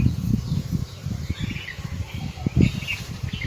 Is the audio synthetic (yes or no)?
no